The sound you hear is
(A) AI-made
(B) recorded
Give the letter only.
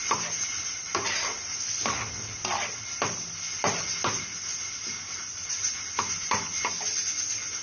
B